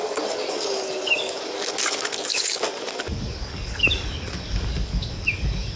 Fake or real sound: fake